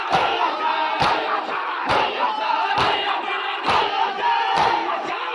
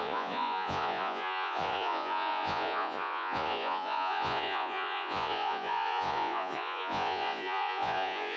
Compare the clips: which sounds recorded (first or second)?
first